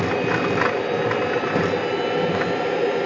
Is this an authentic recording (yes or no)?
yes